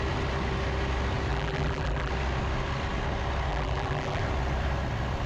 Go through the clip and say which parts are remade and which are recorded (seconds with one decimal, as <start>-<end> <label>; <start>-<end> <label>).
0.0-1.3 recorded; 1.3-2.1 remade; 2.1-3.5 recorded; 3.5-4.2 remade; 4.2-5.3 recorded